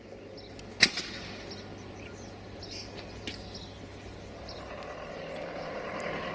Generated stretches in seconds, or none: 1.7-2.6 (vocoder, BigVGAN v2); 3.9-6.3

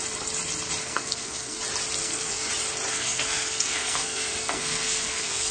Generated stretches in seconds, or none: 0.8-1.6 (codec, SNAC); 2.0-2.5; 2.9-5.5